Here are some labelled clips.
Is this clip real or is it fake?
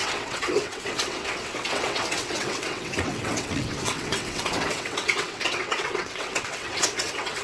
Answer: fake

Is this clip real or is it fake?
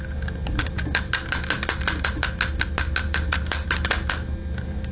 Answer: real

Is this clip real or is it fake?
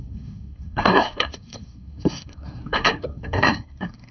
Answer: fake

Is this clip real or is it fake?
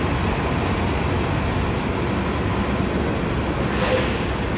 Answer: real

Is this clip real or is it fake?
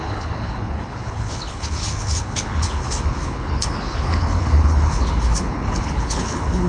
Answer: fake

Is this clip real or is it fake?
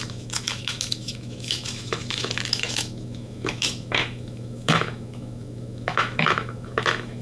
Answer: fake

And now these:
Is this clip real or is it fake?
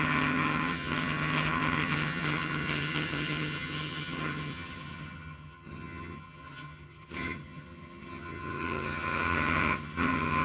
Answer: fake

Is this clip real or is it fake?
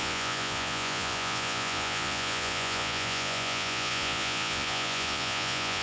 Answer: fake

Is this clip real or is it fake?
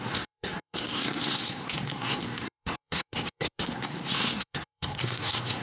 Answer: fake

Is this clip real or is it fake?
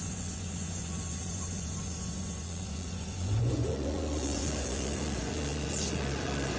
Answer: fake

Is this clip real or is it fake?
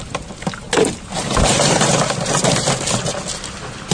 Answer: real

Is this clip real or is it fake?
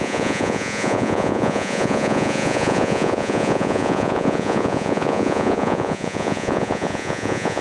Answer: fake